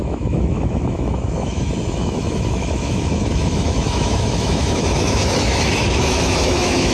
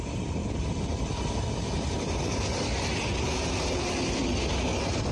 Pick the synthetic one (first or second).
first